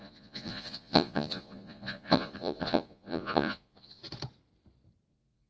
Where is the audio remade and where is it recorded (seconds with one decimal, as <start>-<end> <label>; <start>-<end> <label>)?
0.0-4.0 remade; 4.0-5.1 recorded; 5.1-5.5 remade